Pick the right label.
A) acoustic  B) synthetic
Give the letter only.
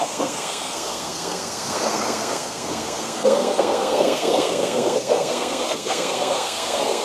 B